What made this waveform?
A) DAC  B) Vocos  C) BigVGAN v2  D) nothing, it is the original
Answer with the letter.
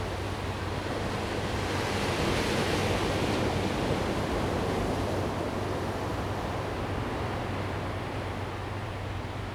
D